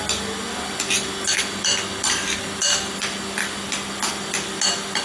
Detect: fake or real real